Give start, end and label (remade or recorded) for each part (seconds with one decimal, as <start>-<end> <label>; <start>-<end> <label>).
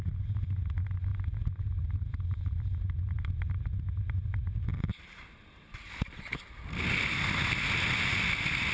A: 0.0-1.1 recorded; 1.1-6.1 remade; 6.1-8.7 recorded